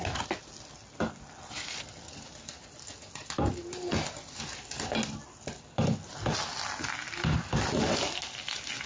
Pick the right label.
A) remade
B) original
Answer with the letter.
B